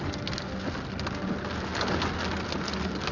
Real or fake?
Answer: real